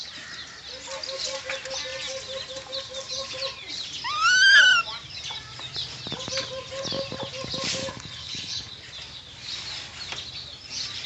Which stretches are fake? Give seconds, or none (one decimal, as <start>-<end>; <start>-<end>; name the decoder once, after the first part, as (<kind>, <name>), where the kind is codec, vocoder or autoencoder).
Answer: 7.8-8.7 (codec, HILCodec)